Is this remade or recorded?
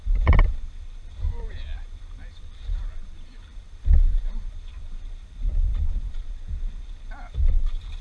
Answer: remade